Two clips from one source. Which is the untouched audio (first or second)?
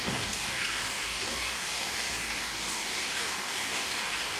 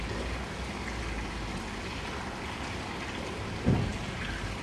second